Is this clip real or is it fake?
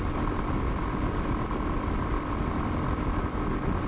real